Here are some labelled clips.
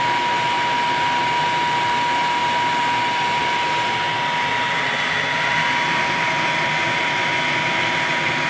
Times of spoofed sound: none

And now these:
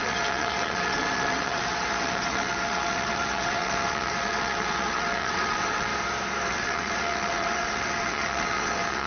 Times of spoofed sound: 0.0-5.9 (vocoder, WaveNeXt); 6.5-9.1

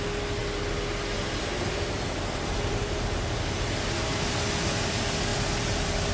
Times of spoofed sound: none

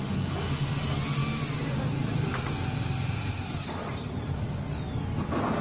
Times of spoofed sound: none

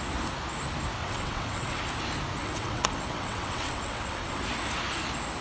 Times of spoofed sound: 1.0-1.8 (vocoder, WaveNeXt); 2.4-4.4

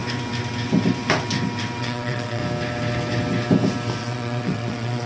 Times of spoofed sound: 1.8-2.4 (vocoder, WaveNeXt); 4.0-5.1

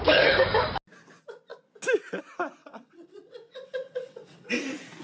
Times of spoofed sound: 2.6-4.6 (vocoder, WaveNeXt)

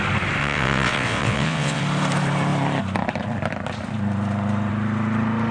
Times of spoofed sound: 0.4-1.8 (vocoder, WaveNeXt)